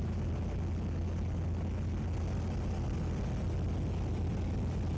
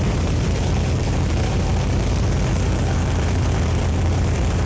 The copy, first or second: second